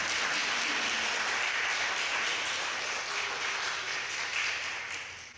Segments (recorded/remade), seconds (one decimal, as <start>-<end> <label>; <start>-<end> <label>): 0.0-5.4 recorded